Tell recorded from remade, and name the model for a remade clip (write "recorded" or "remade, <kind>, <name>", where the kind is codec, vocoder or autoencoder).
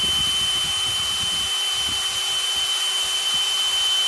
recorded